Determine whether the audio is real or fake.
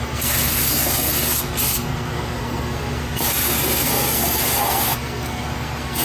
fake